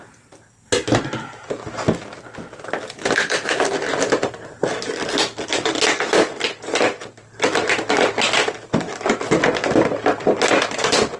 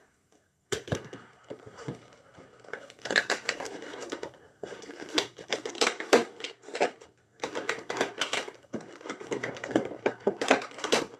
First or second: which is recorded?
first